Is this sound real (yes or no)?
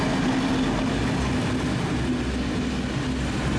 yes